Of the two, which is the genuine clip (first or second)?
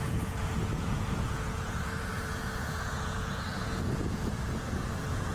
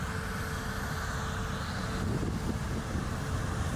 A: second